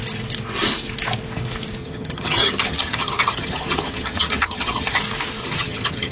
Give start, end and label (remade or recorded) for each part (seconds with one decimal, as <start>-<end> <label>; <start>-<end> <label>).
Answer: 0.0-1.8 recorded; 1.8-5.0 remade; 5.0-5.4 recorded; 5.4-6.1 remade